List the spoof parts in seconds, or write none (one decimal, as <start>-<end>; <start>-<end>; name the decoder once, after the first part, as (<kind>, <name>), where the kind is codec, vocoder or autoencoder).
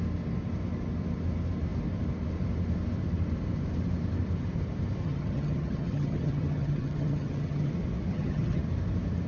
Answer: 5.0-7.7 (vocoder, HiFi-GAN); 8.1-8.6